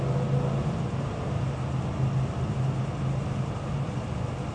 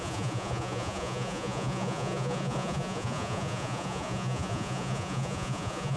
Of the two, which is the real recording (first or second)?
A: first